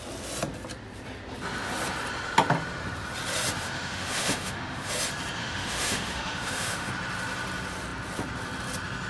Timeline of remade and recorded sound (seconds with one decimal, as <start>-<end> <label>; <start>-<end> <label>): 0.0-3.6 recorded; 3.6-4.9 remade; 4.9-5.4 recorded; 5.4-6.9 remade; 6.9-9.1 recorded